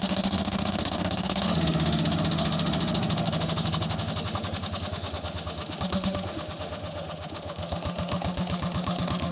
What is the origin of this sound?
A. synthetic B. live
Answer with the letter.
A